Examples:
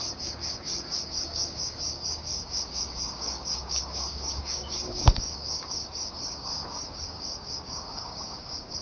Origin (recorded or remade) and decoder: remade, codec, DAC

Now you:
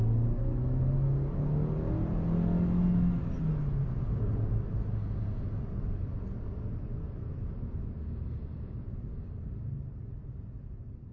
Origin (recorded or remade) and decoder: recorded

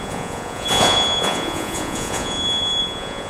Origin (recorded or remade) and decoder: remade, vocoder, Vocos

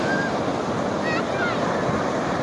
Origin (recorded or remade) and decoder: recorded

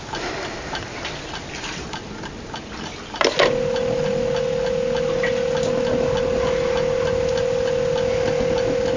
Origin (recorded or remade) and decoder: recorded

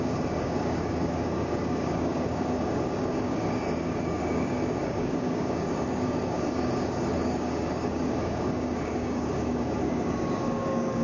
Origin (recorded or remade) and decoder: remade, codec, DAC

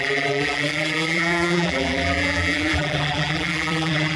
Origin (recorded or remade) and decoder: remade, vocoder, BigVGAN v2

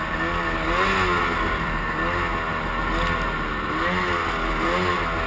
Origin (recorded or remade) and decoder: recorded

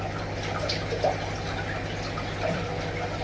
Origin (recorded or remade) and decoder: recorded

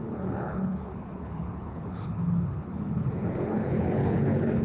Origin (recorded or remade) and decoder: remade, codec, HILCodec